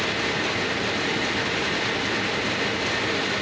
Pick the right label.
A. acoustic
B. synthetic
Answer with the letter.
A